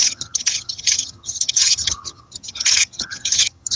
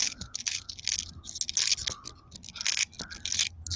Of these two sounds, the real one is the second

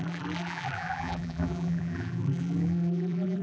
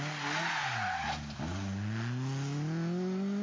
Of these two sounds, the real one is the second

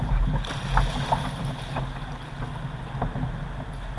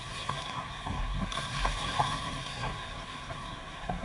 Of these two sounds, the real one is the first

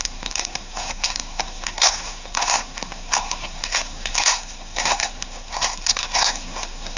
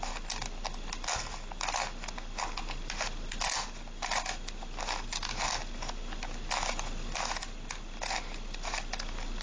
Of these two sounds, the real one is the second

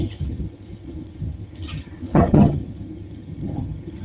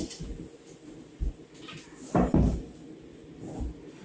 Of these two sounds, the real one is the second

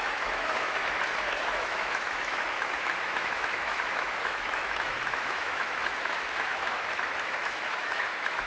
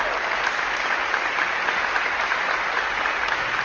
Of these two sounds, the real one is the second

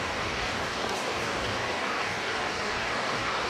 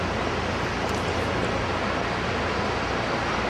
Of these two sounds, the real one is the second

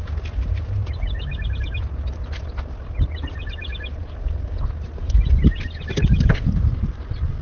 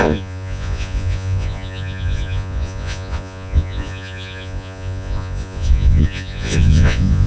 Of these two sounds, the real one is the first